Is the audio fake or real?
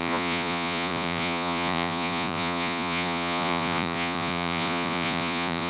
fake